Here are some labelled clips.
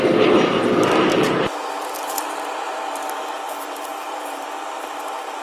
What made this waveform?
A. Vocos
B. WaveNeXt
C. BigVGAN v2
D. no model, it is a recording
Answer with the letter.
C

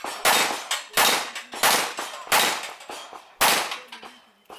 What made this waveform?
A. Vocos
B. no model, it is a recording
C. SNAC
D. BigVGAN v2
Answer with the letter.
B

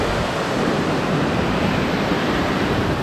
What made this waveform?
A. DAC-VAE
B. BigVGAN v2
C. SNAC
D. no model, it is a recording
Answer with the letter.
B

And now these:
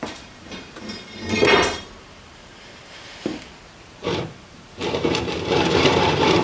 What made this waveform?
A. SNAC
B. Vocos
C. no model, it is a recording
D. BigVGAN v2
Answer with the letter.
D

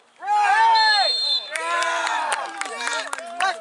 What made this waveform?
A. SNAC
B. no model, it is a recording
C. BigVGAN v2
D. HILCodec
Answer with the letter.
B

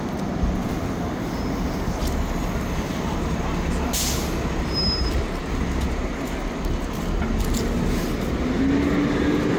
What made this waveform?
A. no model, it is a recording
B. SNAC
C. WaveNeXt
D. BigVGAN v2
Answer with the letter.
A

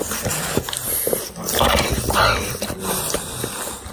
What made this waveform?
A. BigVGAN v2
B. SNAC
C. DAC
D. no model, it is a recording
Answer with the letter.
D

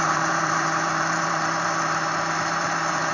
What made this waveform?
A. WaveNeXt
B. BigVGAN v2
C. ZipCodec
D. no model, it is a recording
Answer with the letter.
B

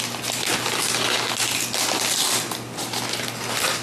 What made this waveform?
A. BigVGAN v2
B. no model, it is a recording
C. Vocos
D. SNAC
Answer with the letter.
B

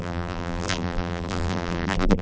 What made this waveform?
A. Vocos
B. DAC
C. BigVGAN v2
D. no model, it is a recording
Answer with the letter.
C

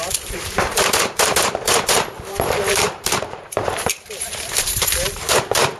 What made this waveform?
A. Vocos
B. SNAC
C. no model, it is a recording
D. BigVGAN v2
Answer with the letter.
D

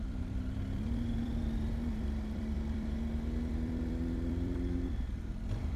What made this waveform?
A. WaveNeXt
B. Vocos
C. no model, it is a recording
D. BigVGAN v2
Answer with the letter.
D